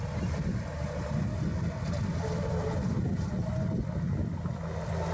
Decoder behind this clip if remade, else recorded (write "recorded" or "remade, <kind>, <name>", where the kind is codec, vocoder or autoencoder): recorded